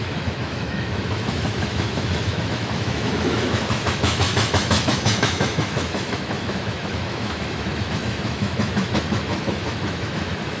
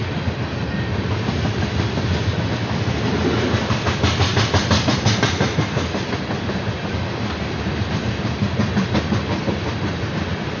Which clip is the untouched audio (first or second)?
second